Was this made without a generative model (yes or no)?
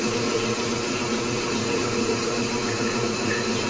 no